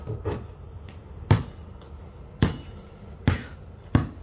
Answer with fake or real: real